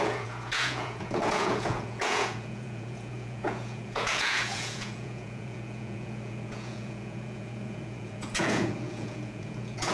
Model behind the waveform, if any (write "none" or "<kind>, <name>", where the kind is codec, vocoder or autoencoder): vocoder, Vocos